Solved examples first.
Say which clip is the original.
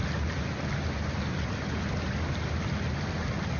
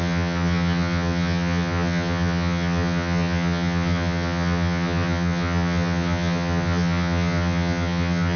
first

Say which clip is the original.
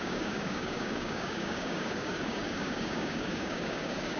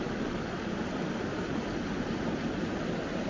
second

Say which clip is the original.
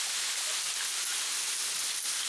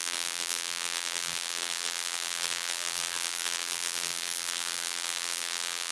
first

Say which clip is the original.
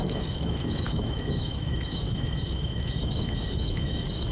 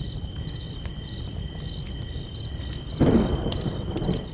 second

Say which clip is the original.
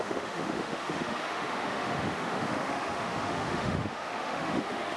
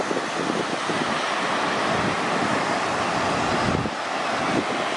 second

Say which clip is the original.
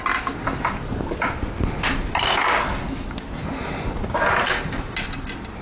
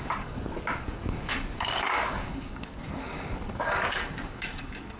first